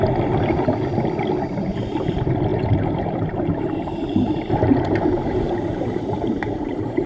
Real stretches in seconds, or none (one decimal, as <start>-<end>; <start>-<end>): 0.0-2.5